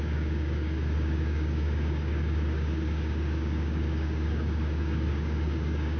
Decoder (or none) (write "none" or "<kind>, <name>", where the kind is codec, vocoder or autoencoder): codec, DAC